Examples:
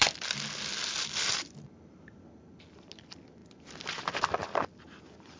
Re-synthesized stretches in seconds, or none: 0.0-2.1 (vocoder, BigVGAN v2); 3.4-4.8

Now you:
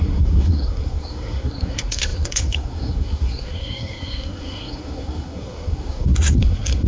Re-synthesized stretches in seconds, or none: 0.0-6.9 (codec, SNAC)

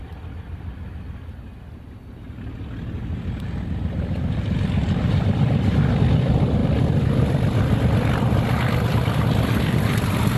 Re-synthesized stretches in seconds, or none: 4.2-4.8 (vocoder, BigVGAN v2); 5.9-10.4

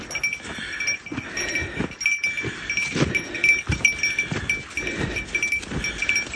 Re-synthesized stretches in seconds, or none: none

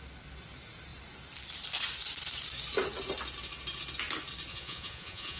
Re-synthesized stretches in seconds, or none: 4.5-5.4 (vocoder, Vocos)